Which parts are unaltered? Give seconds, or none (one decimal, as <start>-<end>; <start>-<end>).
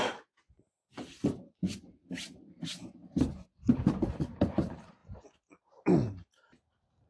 3.0-3.7